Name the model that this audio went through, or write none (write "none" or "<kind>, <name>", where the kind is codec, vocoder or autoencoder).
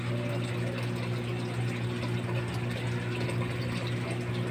none